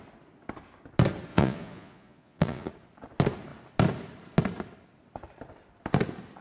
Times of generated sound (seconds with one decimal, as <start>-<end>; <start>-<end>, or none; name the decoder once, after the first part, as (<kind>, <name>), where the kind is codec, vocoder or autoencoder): 1.3-2.7 (vocoder, Vocos)